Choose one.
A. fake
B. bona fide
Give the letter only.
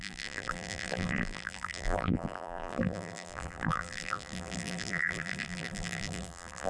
A